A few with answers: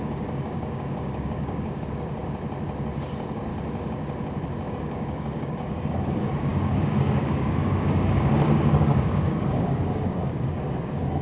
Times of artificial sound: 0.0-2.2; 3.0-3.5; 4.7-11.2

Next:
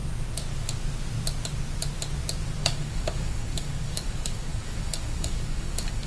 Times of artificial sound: 2.6-6.1

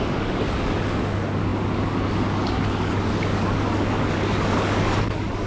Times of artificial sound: 0.0-5.5

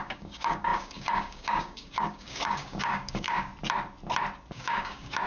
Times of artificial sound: 0.0-3.5; 4.5-5.3